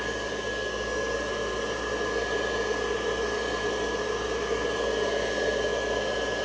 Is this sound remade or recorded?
recorded